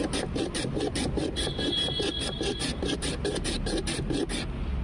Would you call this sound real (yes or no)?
yes